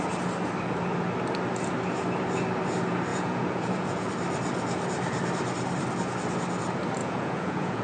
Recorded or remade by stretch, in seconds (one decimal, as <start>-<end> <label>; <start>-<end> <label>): 0.0-3.1 recorded; 3.1-4.1 remade; 4.1-7.0 recorded; 7.0-7.8 remade